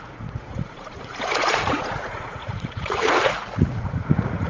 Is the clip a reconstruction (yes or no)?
yes